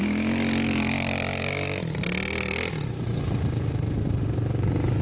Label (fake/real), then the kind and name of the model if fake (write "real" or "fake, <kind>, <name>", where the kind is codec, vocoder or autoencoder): real